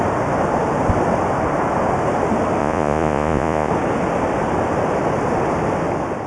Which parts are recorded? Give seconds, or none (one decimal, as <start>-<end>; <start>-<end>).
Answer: 0.0-2.6; 3.7-6.3